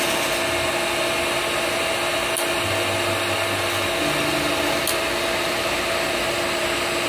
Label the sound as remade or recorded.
remade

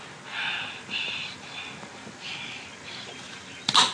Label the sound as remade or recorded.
recorded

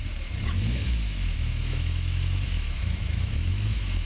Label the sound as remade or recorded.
remade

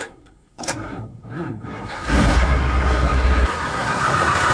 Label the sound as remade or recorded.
remade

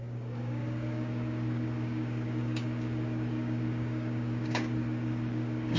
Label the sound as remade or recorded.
remade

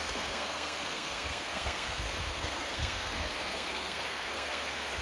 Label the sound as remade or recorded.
remade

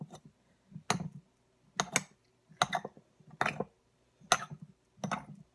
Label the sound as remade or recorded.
recorded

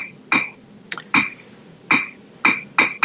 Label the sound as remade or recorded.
recorded